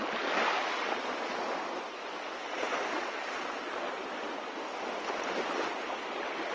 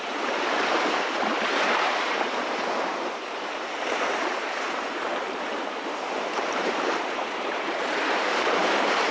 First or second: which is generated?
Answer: second